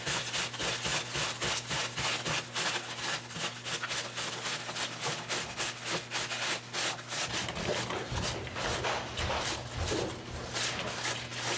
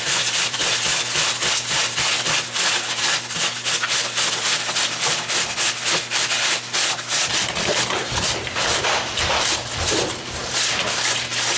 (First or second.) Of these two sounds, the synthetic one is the second